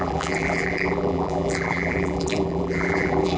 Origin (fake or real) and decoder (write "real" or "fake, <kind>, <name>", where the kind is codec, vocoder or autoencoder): fake, vocoder, BigVGAN v2